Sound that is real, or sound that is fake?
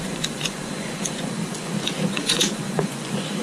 fake